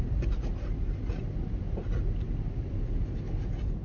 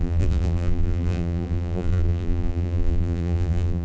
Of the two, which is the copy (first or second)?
second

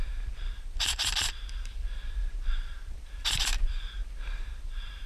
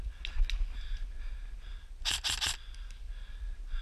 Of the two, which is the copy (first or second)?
first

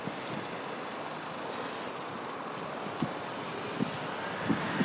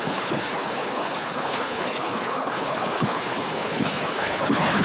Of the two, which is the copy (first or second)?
second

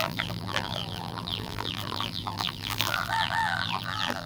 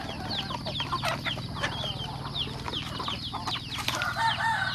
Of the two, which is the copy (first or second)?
first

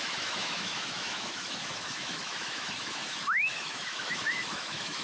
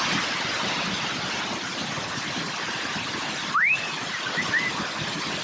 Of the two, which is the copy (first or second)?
first